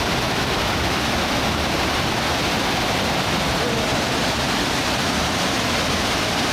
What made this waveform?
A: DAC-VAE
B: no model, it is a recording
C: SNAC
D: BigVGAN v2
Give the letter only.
B